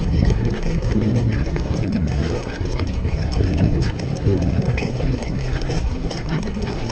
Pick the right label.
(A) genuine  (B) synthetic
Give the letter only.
B